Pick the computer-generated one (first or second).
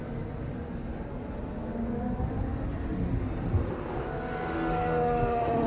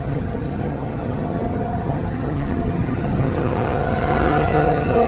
second